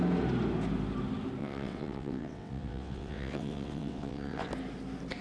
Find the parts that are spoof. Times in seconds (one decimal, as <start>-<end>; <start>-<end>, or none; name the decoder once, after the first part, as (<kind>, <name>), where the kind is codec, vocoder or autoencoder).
1.4-4.5 (vocoder, WaveNeXt)